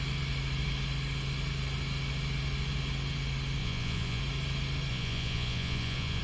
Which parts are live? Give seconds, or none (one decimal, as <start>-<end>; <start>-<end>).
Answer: 0.0-3.6; 4.2-4.9